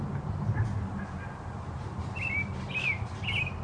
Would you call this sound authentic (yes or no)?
yes